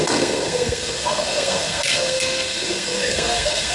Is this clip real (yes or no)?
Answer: no